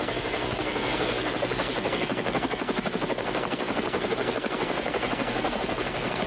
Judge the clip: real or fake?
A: fake